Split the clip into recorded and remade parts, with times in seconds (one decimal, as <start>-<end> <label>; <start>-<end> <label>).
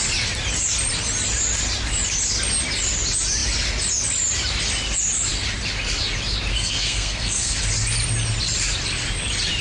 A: 0.0-6.5 recorded; 6.5-7.6 remade; 7.6-9.6 recorded